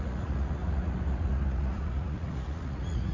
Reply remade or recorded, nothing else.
remade